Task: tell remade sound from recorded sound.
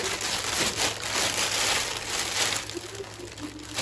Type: recorded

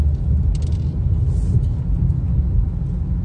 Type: recorded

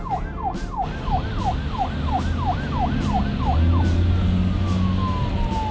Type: recorded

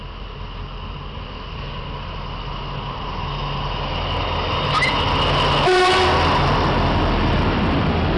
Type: recorded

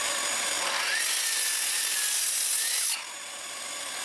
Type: recorded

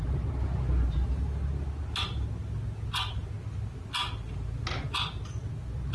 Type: recorded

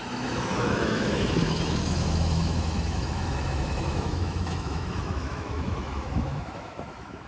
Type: remade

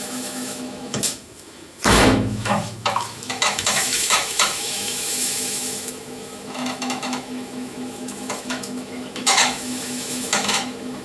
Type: remade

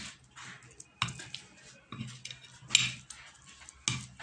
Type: recorded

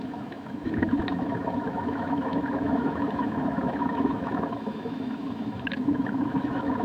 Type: remade